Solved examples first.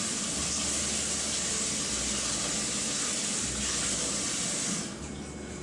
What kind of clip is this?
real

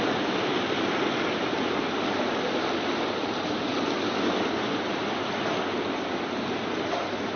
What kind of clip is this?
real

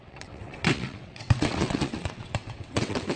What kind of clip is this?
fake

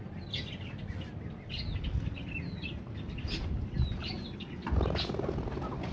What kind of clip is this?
real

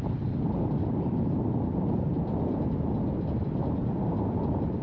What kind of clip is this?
real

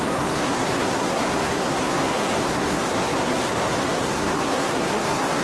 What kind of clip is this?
fake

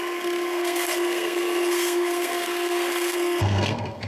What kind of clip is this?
fake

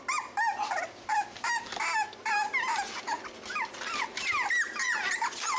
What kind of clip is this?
real